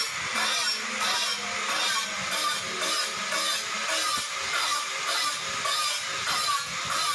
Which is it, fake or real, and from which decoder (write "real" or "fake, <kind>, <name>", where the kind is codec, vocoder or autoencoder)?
real